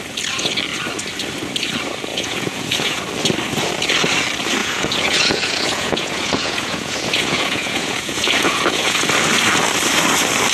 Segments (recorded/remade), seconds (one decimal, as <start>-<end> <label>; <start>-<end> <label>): 0.0-2.1 recorded; 2.1-3.0 remade; 3.0-4.6 recorded; 4.6-9.0 remade; 9.0-10.5 recorded